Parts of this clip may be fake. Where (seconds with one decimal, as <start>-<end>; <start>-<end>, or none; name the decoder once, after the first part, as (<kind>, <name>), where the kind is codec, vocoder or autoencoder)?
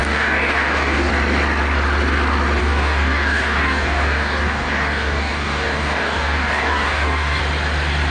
0.0-1.1 (codec, DAC); 2.6-7.4